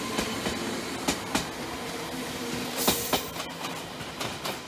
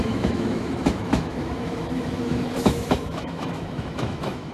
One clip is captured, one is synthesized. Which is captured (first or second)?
first